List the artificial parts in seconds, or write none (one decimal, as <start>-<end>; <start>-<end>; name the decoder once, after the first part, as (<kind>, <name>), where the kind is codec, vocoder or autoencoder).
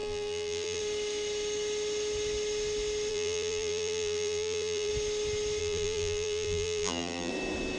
0.0-0.8 (vocoder, BigVGAN v2); 3.1-4.9; 5.6-7.3